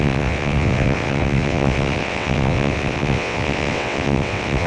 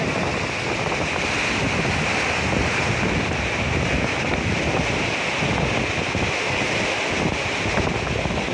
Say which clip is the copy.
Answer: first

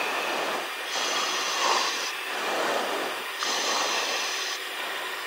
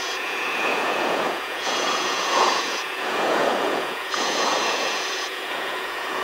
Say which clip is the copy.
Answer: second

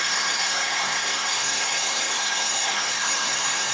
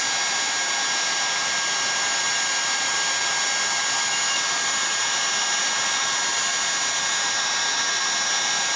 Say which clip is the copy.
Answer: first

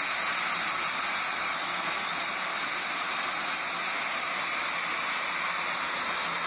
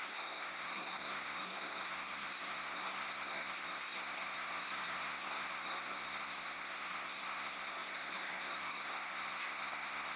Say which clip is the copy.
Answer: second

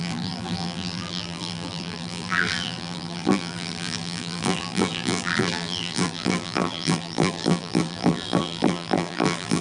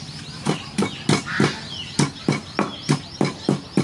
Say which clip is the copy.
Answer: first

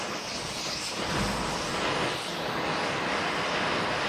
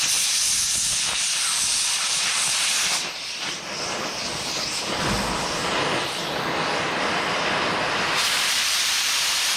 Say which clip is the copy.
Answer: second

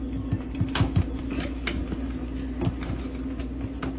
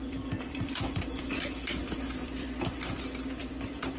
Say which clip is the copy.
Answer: second